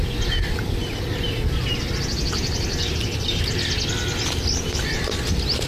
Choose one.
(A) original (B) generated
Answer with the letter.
A